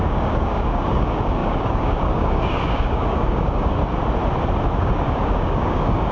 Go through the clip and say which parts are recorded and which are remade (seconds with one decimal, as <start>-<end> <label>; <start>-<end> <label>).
0.0-3.8 remade; 3.8-4.8 recorded; 4.8-6.1 remade